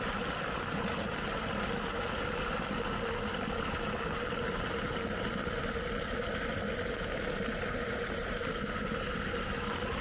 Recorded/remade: recorded